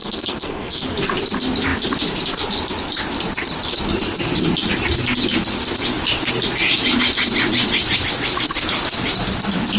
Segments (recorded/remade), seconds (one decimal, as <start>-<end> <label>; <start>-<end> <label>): 0.0-0.8 remade; 0.8-9.8 recorded